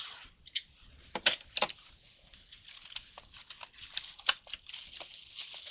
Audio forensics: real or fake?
real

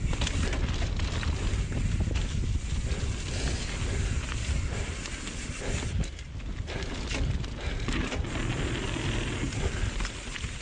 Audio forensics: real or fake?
real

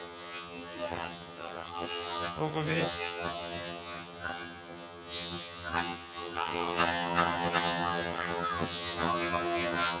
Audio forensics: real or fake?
fake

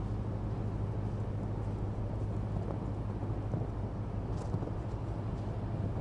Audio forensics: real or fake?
real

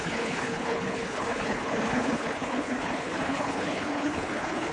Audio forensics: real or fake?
fake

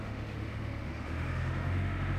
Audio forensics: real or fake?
fake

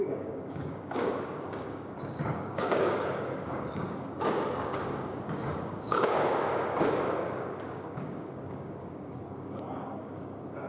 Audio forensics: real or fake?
fake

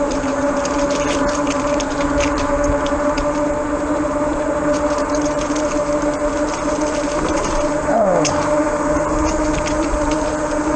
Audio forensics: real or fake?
fake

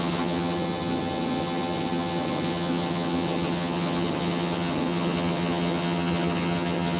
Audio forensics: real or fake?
fake